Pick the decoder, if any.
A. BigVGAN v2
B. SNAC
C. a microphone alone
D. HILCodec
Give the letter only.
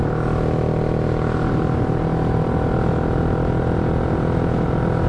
C